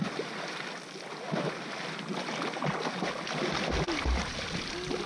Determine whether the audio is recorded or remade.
recorded